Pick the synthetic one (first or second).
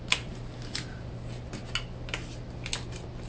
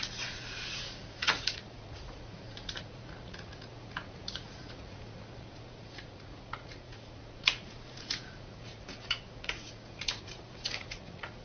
second